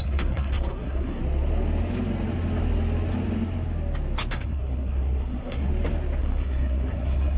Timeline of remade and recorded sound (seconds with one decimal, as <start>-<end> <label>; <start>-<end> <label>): 0.0-1.2 remade; 1.2-4.3 recorded; 4.3-5.7 remade; 5.7-6.2 recorded; 6.2-7.4 remade